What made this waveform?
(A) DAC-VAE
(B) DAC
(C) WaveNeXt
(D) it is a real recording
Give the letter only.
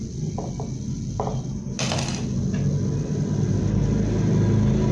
D